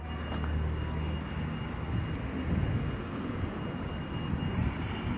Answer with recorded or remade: recorded